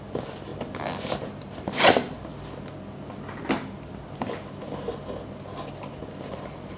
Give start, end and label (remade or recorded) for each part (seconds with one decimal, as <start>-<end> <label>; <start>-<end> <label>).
0.0-0.5 remade; 0.5-1.1 recorded; 1.1-2.3 remade; 2.3-6.0 recorded; 6.0-6.8 remade